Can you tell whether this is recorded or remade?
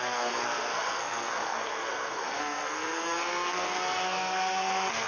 remade